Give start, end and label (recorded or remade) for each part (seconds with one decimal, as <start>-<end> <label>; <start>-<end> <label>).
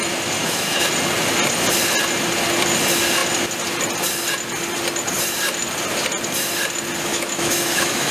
0.0-0.4 recorded; 0.4-0.9 remade; 0.9-7.1 recorded; 7.1-8.1 remade